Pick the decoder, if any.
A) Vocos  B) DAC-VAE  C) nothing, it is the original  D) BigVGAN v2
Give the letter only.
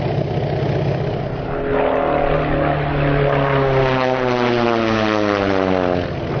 C